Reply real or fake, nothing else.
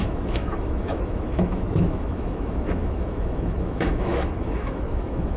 fake